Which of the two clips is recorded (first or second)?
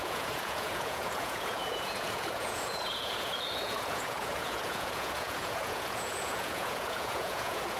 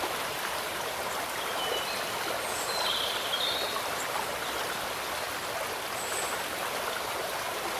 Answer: second